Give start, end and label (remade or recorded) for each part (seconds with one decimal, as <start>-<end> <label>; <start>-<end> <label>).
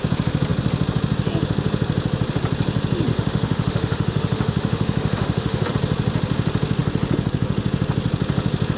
0.0-3.1 recorded; 3.1-5.7 remade; 5.7-8.8 recorded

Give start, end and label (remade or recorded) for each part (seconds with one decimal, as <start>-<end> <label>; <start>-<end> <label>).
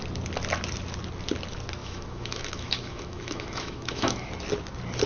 0.0-1.8 recorded; 1.8-4.3 remade; 4.3-5.1 recorded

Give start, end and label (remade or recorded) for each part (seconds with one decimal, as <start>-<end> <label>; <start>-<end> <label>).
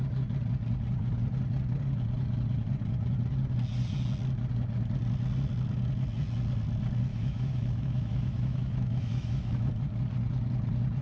0.0-7.1 recorded; 7.1-9.7 remade; 9.7-11.0 recorded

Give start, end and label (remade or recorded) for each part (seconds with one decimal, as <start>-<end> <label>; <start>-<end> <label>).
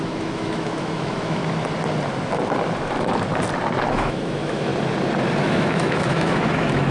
0.0-1.4 remade; 1.4-3.9 recorded; 3.9-4.7 remade; 4.7-5.4 recorded; 5.4-6.9 remade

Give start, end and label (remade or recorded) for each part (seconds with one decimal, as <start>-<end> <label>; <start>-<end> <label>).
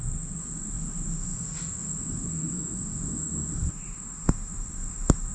0.0-5.3 remade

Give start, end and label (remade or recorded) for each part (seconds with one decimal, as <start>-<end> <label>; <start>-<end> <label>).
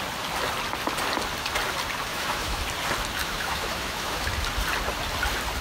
0.0-2.1 recorded; 2.1-2.6 remade; 2.6-3.2 recorded; 3.2-4.3 remade; 4.3-5.6 recorded